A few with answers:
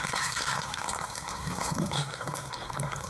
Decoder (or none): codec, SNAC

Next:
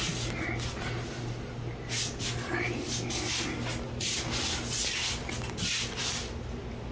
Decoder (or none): none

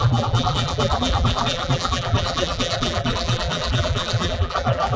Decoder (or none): vocoder, BigVGAN v2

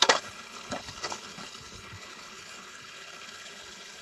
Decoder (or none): codec, HILCodec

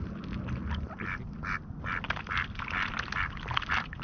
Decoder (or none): none